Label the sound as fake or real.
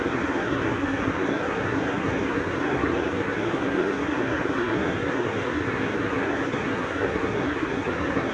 fake